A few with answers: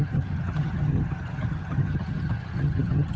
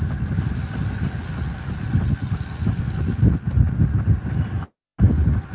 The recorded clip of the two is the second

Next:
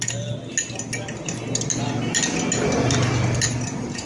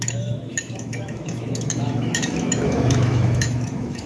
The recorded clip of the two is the first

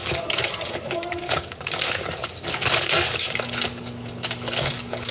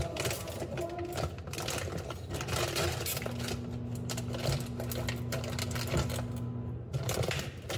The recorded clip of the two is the second